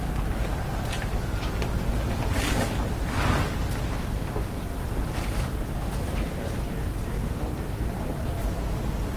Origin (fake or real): real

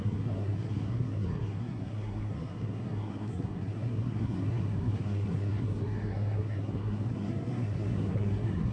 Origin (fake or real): fake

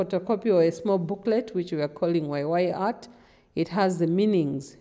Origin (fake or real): real